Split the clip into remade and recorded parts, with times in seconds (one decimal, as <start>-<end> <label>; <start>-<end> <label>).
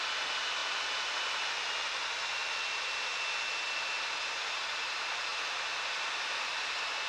0.0-7.1 recorded